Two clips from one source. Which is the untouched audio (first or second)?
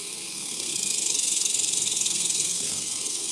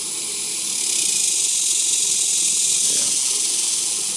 second